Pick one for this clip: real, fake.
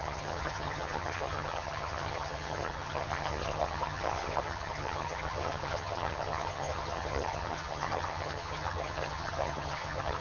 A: fake